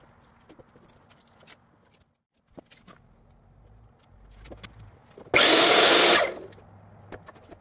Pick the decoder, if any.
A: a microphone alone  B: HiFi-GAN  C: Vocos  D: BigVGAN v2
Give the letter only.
A